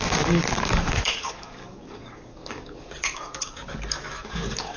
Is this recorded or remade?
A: remade